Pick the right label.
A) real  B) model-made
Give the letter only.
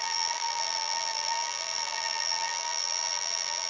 B